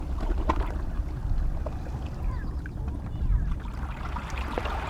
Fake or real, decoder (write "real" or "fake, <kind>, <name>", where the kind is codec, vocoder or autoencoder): real